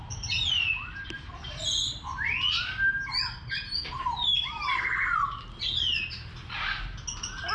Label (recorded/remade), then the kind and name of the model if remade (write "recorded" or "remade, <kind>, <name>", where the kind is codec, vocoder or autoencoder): recorded